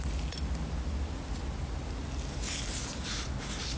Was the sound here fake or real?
real